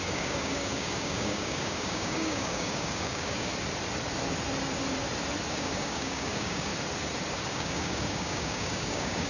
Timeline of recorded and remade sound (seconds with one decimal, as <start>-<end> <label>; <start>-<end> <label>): 0.0-3.5 remade; 3.5-5.5 recorded; 5.5-6.7 remade; 6.7-7.5 recorded; 7.5-9.3 remade